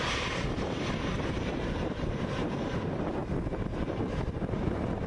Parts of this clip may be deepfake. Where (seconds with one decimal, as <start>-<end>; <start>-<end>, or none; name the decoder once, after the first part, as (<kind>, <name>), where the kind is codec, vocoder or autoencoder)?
0.0-3.2 (vocoder, BigVGAN v2); 4.3-5.1